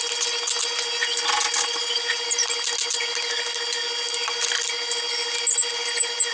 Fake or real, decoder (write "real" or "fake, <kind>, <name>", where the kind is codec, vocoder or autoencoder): real